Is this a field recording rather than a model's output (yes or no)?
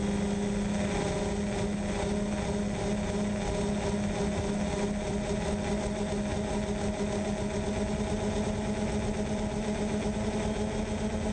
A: yes